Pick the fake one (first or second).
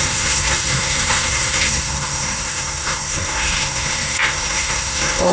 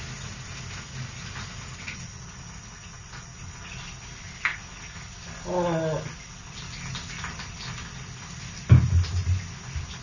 first